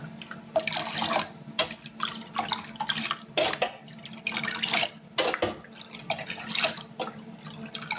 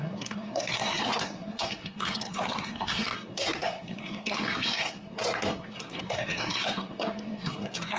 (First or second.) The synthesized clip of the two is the second